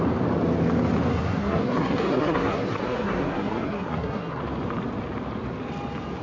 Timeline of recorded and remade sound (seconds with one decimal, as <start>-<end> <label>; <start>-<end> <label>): 0.0-1.1 recorded; 1.1-4.4 remade; 4.4-6.2 recorded